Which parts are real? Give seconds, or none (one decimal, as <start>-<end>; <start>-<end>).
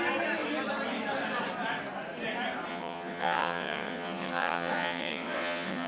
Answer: 0.0-2.7